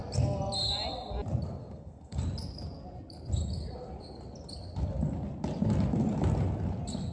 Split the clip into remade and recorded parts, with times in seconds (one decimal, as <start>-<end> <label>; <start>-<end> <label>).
0.0-1.6 recorded; 1.6-2.2 remade; 2.2-7.1 recorded